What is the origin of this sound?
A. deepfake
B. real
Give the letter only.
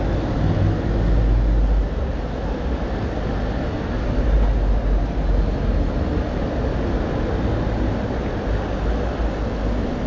B